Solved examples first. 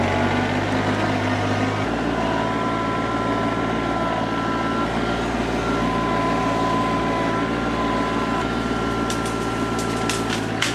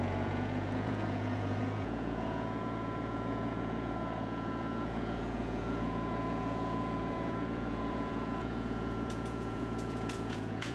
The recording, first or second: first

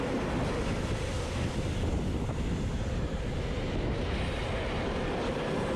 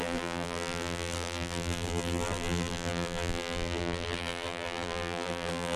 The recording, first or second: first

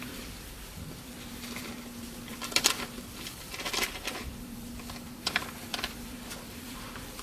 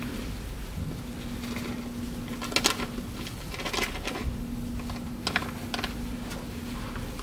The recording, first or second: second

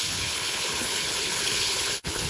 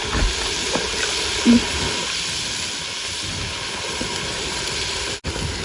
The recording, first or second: second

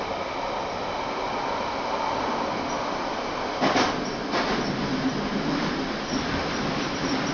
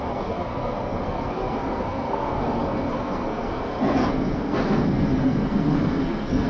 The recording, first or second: first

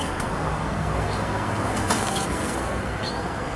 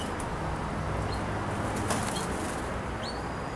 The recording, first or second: second